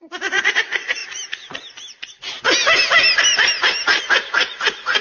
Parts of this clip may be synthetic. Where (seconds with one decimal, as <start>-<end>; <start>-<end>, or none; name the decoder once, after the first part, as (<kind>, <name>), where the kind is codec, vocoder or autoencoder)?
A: 0.0-1.0 (vocoder, Vocos); 4.0-5.0